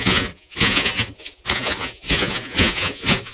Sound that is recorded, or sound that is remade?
remade